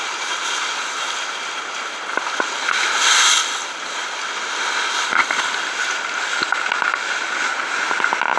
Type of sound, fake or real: real